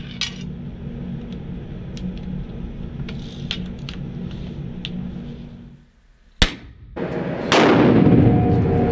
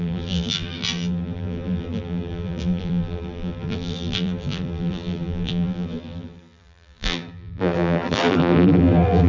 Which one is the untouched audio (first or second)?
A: first